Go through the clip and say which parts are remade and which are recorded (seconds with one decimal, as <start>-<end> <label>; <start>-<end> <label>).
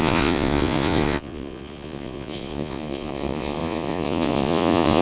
0.0-5.0 remade